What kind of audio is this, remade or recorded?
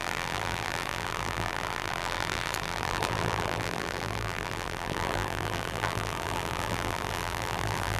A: remade